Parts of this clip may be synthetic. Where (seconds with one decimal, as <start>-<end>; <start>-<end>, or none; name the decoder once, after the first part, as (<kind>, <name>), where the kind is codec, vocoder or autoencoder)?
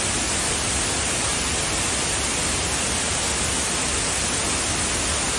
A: none